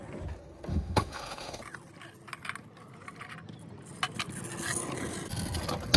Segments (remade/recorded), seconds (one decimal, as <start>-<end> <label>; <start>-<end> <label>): 0.0-0.7 recorded; 0.7-1.6 remade; 1.6-6.0 recorded

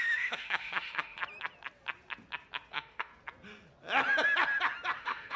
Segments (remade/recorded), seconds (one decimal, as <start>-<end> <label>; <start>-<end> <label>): 0.0-1.2 remade; 1.2-2.7 recorded; 2.7-3.1 remade; 3.1-5.0 recorded; 5.0-5.4 remade